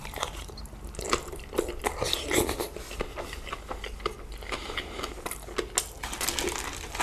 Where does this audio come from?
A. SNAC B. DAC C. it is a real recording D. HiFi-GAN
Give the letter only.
C